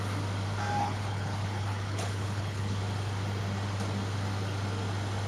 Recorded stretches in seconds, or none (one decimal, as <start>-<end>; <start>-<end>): 0.0-0.8; 2.8-5.3